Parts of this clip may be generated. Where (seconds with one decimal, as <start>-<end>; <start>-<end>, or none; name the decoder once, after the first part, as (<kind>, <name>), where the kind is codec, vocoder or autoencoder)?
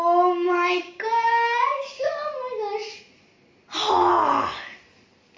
0.8-2.1 (codec, DAC)